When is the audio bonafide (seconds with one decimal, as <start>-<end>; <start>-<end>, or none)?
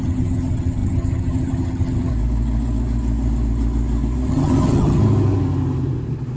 2.1-4.3; 5.0-6.4